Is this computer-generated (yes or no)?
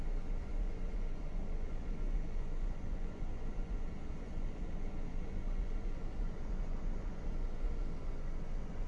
yes